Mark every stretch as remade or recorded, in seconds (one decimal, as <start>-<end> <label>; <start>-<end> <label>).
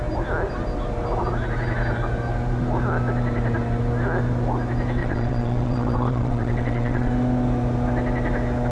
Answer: 0.0-5.0 recorded; 5.0-7.1 remade; 7.1-8.7 recorded